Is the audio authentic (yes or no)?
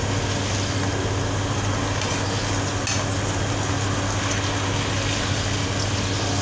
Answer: yes